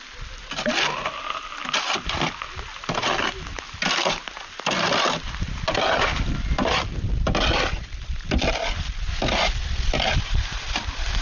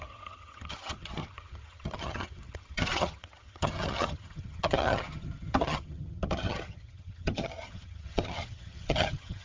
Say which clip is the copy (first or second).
second